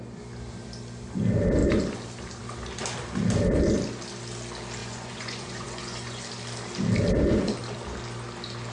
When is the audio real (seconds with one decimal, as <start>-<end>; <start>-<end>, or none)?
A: 0.0-4.8; 6.2-8.7